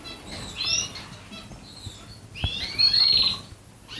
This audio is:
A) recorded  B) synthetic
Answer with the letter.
A